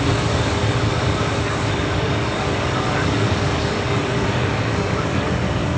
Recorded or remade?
remade